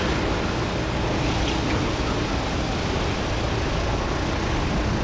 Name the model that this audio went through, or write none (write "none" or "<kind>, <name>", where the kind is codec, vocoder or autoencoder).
none